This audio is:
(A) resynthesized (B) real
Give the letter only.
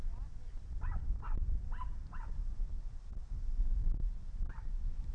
B